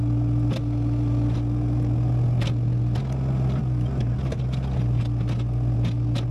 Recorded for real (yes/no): yes